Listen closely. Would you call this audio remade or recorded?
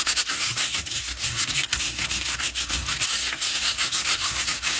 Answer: remade